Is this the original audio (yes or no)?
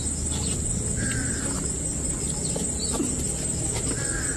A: yes